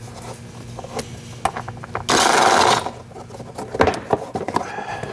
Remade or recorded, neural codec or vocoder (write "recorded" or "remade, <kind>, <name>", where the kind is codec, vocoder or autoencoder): recorded